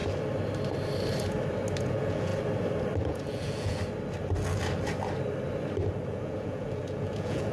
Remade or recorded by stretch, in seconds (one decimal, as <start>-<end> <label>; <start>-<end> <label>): 0.0-1.8 recorded; 1.8-2.3 remade; 2.3-3.0 recorded; 3.0-3.8 remade; 3.8-6.1 recorded; 6.1-7.5 remade